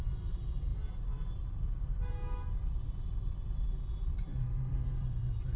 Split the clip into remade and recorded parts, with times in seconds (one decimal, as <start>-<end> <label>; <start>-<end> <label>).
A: 0.0-5.6 remade